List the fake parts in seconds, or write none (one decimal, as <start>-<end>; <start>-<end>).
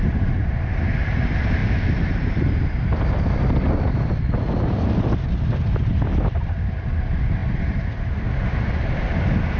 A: none